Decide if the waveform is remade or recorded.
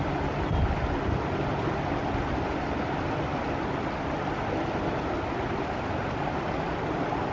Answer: recorded